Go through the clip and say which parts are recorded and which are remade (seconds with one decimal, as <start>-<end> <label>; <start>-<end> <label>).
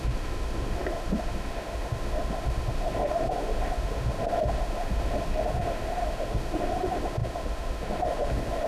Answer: 0.0-8.7 remade